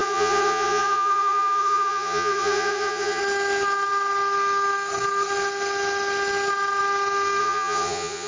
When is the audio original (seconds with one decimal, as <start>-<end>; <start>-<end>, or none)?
3.2-7.4